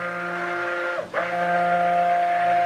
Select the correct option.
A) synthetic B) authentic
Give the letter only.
B